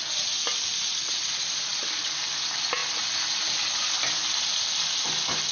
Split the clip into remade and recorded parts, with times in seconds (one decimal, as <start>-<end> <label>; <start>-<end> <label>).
0.0-5.5 recorded